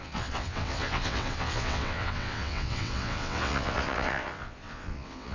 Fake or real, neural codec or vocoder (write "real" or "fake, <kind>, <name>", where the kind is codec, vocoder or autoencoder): fake, vocoder, WaveNeXt